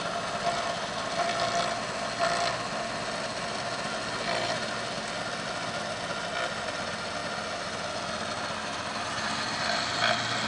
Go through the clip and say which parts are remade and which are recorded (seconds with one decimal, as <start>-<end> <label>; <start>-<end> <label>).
0.0-10.5 recorded